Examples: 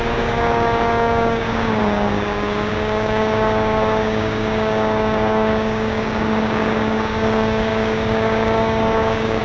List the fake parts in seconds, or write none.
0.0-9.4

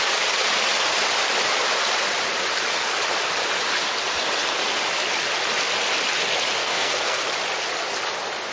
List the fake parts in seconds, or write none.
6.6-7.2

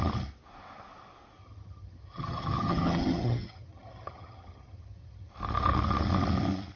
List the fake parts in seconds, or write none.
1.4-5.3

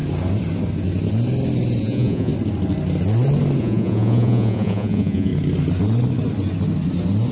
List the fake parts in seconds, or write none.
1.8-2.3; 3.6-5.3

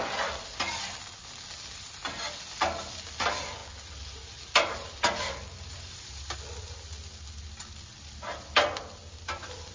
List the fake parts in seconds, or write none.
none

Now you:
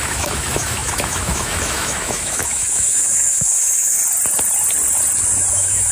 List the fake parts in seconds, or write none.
0.0-4.0; 5.5-5.9

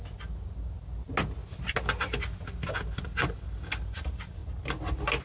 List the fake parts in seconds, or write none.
none

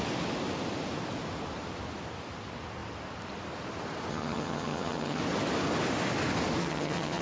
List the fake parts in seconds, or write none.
4.1-5.2; 6.6-7.2